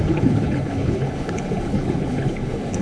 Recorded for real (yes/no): no